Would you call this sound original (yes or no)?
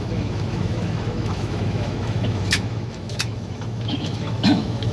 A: no